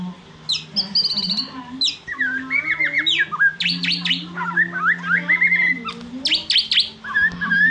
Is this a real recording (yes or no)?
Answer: yes